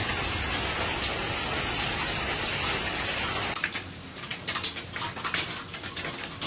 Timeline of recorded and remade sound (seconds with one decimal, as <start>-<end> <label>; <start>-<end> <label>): 0.0-6.5 recorded